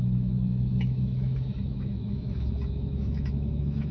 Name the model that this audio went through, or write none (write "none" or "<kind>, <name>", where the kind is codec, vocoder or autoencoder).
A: autoencoder, DAC-VAE